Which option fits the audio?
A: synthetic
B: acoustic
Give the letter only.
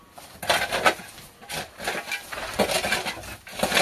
B